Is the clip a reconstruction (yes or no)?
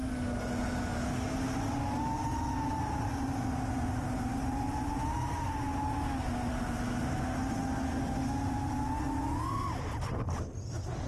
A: no